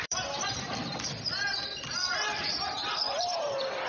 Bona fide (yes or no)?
no